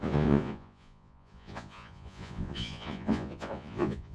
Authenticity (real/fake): fake